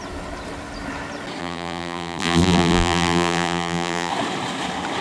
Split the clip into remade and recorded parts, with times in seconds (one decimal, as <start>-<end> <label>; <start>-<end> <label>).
0.0-1.4 recorded; 1.4-4.1 remade; 4.1-5.0 recorded